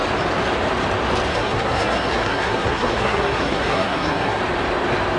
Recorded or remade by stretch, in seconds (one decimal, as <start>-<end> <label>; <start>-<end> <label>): 0.0-1.3 recorded; 1.3-4.4 remade; 4.4-5.2 recorded

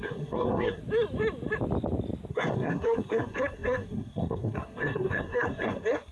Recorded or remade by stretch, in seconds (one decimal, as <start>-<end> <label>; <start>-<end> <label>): 0.0-0.8 remade; 0.8-2.3 recorded; 2.3-6.1 remade